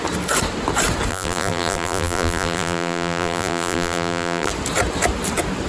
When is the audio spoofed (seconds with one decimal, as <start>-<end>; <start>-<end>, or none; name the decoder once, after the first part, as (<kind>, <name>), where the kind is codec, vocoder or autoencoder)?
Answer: 1.1-4.5 (vocoder, BigVGAN v2)